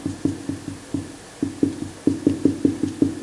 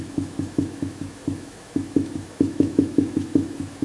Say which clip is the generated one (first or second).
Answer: second